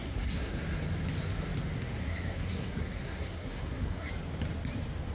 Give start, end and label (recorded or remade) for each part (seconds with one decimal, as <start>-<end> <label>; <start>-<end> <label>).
0.0-0.6 remade; 0.6-2.0 recorded; 2.0-4.1 remade; 4.1-5.1 recorded